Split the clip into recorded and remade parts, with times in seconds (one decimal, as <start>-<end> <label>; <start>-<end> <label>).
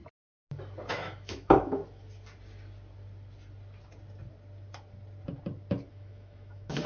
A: 0.0-0.9 recorded; 0.9-1.8 remade; 1.8-5.9 recorded; 5.9-6.9 remade